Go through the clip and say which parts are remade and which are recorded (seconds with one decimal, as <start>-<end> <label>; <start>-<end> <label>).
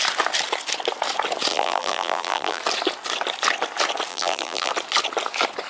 0.0-1.5 recorded; 1.5-2.6 remade; 2.6-4.1 recorded; 4.1-4.7 remade; 4.7-5.7 recorded